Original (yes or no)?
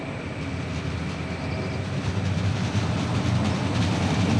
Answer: yes